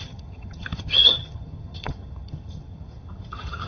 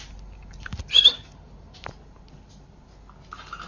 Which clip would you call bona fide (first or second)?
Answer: second